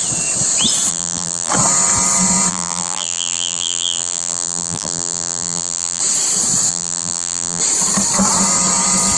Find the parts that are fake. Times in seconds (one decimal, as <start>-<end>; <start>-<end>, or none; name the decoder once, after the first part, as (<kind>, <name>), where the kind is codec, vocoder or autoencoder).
0.9-1.5 (vocoder, BigVGAN v2); 2.5-6.0; 6.7-7.6